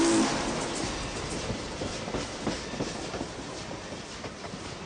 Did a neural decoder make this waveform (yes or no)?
no